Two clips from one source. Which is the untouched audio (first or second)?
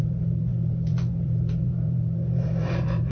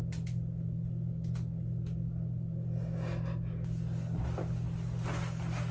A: second